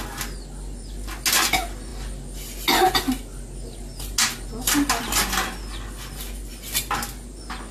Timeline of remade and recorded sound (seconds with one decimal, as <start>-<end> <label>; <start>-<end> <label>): 0.0-7.7 recorded